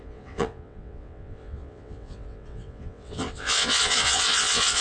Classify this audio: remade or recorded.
remade